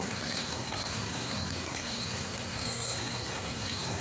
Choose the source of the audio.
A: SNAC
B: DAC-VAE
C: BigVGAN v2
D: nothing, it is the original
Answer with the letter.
A